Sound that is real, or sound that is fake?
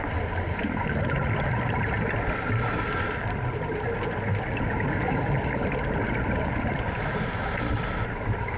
real